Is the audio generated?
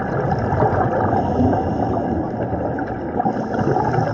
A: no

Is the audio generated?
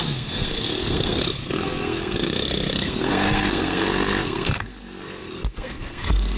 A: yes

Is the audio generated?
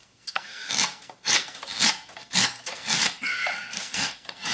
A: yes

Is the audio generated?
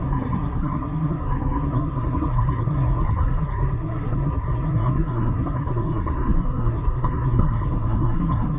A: yes